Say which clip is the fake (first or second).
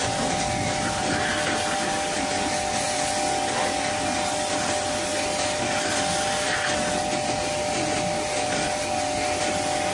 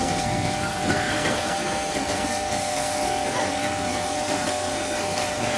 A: second